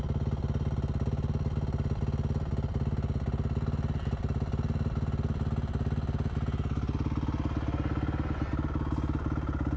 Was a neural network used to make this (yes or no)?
no